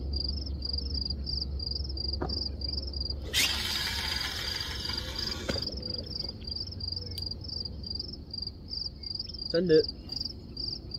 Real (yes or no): yes